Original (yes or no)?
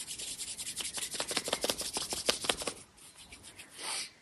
yes